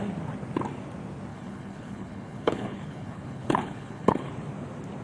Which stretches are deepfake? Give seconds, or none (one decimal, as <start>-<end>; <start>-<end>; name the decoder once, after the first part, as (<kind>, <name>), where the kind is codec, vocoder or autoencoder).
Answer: 1.3-4.3 (codec, HILCodec)